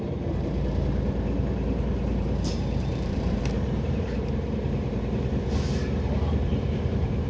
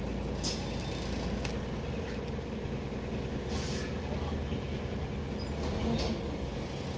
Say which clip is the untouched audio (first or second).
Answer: second